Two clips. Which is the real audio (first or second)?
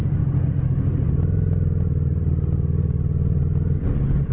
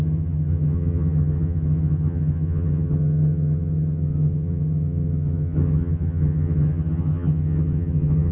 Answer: first